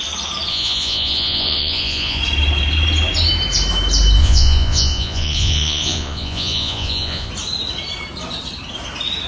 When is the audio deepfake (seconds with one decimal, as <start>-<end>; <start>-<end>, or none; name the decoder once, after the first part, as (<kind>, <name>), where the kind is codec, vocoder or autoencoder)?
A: 0.5-2.2 (vocoder, Vocos); 4.2-7.3